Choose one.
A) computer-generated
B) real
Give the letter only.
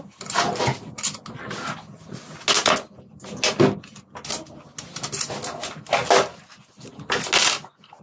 B